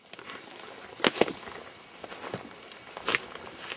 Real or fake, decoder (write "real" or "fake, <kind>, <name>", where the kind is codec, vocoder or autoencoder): real